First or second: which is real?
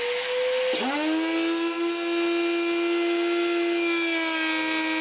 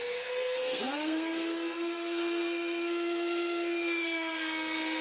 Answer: first